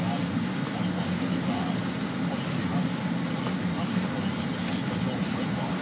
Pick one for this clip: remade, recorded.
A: recorded